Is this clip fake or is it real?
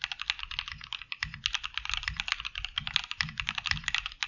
real